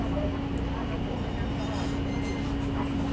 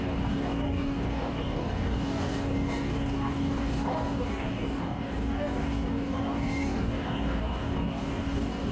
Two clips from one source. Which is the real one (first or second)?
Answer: first